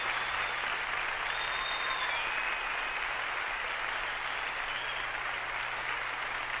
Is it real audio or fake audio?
real